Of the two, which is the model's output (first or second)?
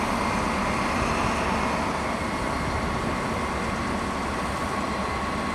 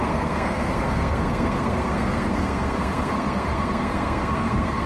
second